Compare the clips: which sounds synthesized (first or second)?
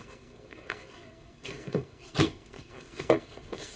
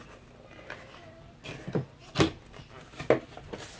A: first